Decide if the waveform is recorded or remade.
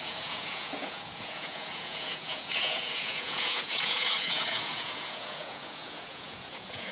remade